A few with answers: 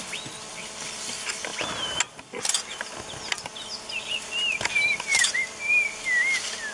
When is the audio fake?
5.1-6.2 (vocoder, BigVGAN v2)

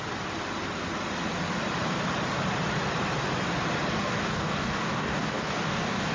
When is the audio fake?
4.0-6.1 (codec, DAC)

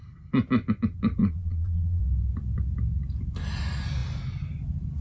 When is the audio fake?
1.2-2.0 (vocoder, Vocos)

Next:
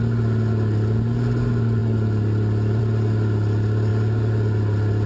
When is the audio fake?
none

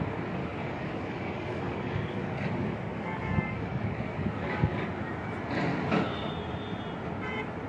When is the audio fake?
0.4-5.0 (codec, DAC); 5.7-6.3

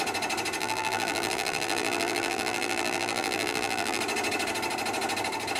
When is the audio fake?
0.6-4.0 (vocoder, BigVGAN v2)

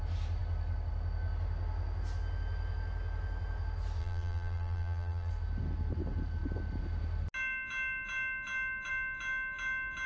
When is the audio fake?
4.0-5.3 (vocoder, BigVGAN v2)